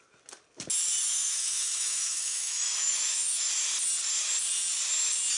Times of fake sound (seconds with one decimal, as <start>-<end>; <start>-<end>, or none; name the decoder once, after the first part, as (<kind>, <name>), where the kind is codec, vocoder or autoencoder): 1.0-3.5 (autoencoder, DAC-VAE)